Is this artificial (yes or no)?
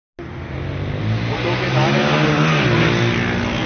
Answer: no